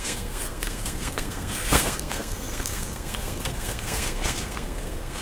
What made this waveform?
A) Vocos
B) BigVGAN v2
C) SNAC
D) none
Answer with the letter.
C